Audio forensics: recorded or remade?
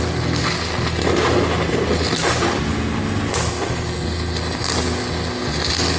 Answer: recorded